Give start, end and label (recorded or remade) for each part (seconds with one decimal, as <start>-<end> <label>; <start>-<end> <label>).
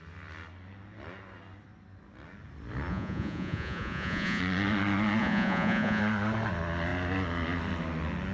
0.0-2.9 recorded; 2.9-4.4 remade; 4.4-5.2 recorded; 5.2-6.0 remade; 6.0-8.3 recorded